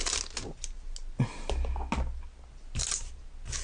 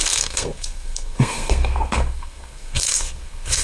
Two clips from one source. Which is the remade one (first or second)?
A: second